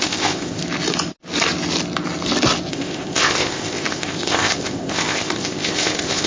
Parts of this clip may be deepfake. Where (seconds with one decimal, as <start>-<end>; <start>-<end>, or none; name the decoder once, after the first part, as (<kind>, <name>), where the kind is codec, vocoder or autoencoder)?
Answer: 0.0-0.6 (codec, ZipCodec); 2.7-6.3